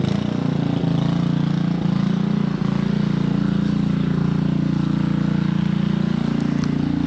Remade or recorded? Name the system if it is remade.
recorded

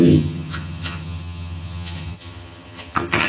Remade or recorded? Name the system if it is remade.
remade, vocoder, HiFi-GAN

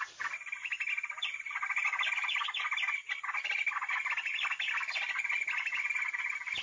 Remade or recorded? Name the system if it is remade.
recorded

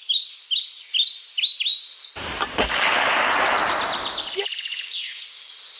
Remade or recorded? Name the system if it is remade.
recorded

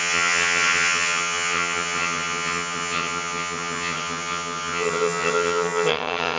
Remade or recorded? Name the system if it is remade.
remade, vocoder, HiFi-GAN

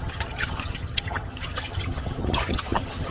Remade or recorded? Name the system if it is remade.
remade, vocoder, HiFi-GAN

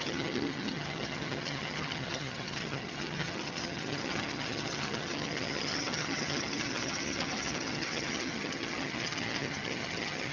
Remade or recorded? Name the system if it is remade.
remade, vocoder, HiFi-GAN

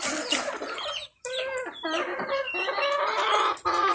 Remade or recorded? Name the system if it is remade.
recorded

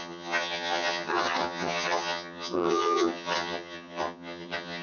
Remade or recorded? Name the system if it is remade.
remade, vocoder, HiFi-GAN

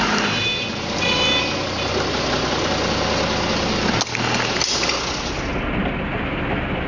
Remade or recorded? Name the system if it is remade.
recorded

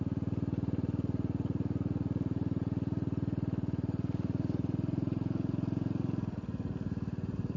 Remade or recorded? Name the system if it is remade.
recorded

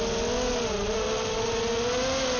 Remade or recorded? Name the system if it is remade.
recorded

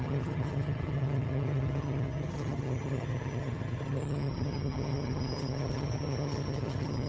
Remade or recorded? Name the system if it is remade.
remade, vocoder, HiFi-GAN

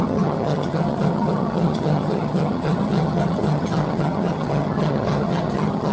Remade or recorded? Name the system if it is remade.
remade, vocoder, HiFi-GAN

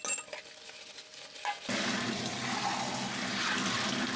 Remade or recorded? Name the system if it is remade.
recorded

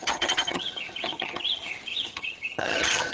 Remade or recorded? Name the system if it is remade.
remade, vocoder, HiFi-GAN